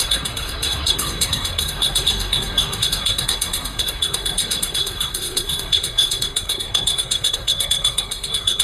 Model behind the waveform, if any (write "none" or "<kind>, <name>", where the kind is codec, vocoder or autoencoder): codec, SNAC